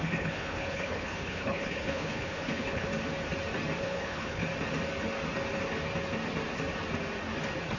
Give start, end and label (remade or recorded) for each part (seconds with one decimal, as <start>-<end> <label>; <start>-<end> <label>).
0.0-2.9 remade; 2.9-3.8 recorded; 3.8-4.4 remade; 4.4-7.8 recorded